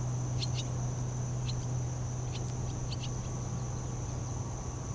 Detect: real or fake real